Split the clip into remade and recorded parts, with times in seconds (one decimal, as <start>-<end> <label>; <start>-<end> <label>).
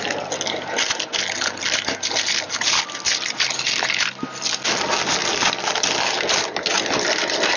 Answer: 0.0-7.6 recorded